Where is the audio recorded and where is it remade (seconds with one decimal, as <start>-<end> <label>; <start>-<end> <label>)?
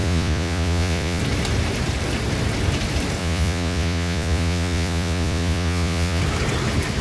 0.0-1.2 remade; 1.2-3.2 recorded; 3.2-6.2 remade; 6.2-7.0 recorded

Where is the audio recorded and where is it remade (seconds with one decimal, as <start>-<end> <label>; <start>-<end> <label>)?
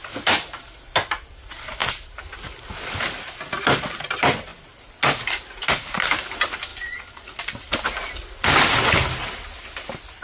0.0-6.7 recorded; 6.7-7.3 remade; 7.3-10.2 recorded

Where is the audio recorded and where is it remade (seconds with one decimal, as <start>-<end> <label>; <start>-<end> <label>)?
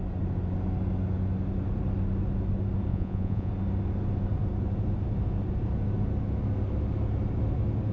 0.0-2.9 recorded; 2.9-3.5 remade; 3.5-7.9 recorded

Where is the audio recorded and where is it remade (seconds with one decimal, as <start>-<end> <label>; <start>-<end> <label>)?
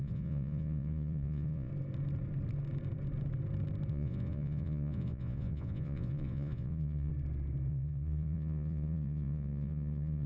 0.0-1.7 remade; 1.7-3.9 recorded; 3.9-7.1 remade; 7.1-7.7 recorded; 7.7-10.3 remade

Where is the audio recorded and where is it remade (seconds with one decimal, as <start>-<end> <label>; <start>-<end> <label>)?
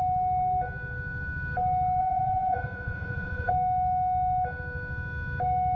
0.0-2.0 recorded; 2.0-3.5 remade; 3.5-5.8 recorded